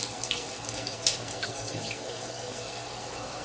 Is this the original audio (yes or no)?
no